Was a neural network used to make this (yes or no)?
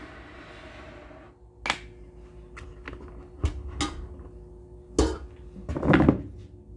no